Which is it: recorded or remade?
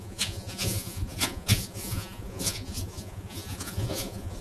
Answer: remade